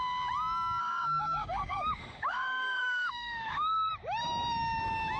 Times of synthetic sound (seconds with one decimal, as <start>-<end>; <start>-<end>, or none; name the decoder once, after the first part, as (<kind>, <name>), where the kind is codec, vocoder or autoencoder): 0.8-3.9 (autoencoder, DAC-VAE)